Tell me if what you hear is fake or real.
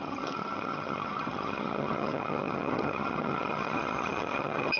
fake